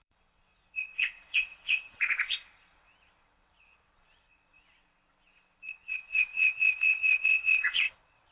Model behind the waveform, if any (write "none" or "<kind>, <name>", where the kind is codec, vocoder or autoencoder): vocoder, WaveNeXt